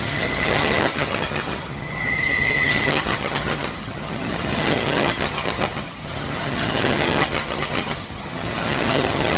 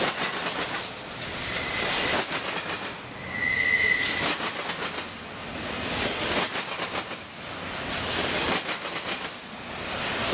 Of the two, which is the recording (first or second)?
second